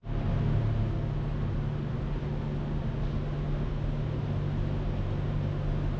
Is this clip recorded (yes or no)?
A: yes